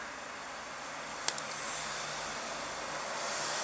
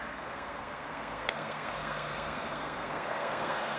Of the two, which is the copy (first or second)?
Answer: second